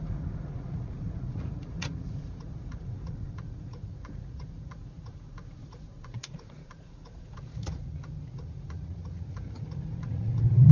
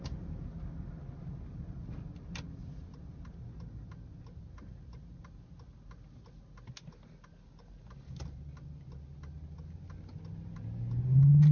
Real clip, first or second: second